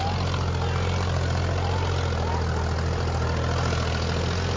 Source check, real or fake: real